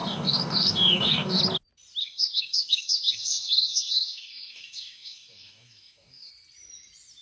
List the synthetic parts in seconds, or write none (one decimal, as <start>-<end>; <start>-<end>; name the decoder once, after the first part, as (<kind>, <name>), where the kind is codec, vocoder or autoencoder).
0.0-1.4 (codec, DAC); 2.0-6.3